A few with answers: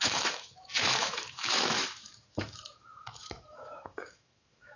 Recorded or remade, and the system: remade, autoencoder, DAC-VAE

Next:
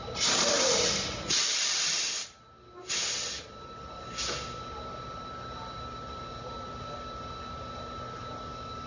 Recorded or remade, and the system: recorded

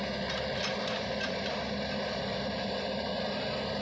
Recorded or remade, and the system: recorded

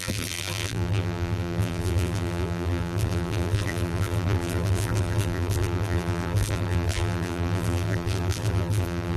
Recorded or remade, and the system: remade, vocoder, BigVGAN v2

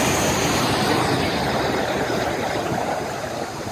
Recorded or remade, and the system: remade, vocoder, BigVGAN v2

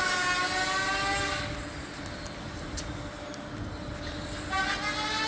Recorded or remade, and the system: recorded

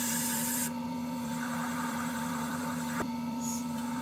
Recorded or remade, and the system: remade, vocoder, BigVGAN v2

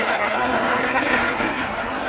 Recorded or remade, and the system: remade, codec, SNAC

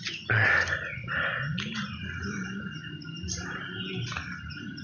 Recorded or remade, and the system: recorded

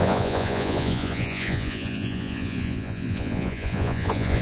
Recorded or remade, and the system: remade, vocoder, Vocos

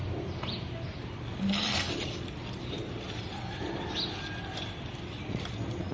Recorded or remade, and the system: recorded